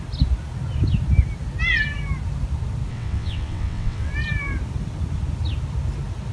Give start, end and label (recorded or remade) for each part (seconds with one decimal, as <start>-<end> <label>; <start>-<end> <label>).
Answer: 0.0-2.9 recorded; 2.9-4.1 remade; 4.1-6.3 recorded

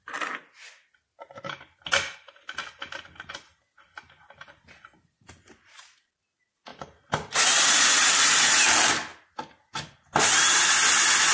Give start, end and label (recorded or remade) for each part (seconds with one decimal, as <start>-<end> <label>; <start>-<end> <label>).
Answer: 0.0-11.3 recorded

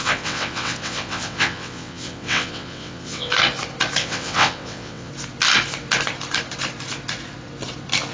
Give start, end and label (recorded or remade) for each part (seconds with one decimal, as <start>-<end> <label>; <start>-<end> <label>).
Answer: 0.0-3.3 remade; 3.3-4.0 recorded; 4.0-5.1 remade; 5.1-8.1 recorded

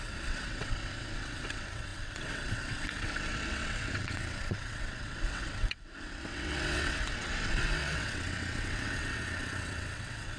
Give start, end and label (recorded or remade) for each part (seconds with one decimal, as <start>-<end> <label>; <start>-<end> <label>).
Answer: 0.0-10.4 remade